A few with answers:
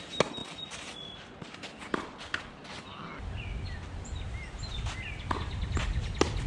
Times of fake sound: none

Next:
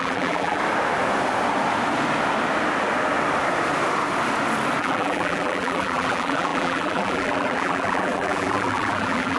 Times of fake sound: 0.0-0.6 (vocoder, BigVGAN v2); 4.8-9.4

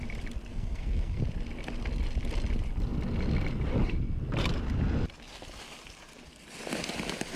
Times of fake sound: 0.5-1.2 (codec, SNAC)

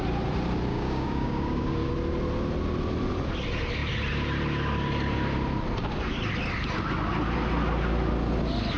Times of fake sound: 0.7-1.9 (codec, DAC)

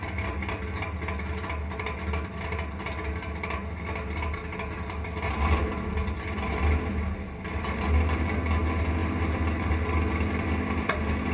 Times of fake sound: none

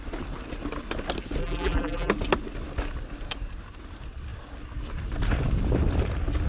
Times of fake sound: 1.4-2.1 (vocoder, BigVGAN v2)